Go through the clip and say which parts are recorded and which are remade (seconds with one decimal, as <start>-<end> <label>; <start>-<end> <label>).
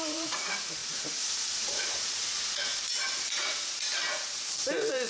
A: 0.0-2.7 remade; 2.7-3.2 recorded; 3.2-3.9 remade; 3.9-5.1 recorded